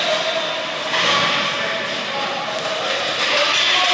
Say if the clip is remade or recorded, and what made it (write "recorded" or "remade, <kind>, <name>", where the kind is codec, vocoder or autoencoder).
recorded